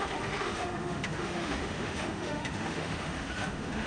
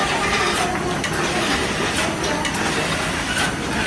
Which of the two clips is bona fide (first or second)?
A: second